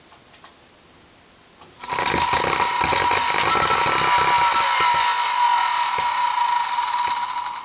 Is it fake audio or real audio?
real